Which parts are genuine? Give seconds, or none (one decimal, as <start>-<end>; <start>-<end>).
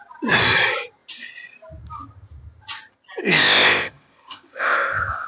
0.0-3.2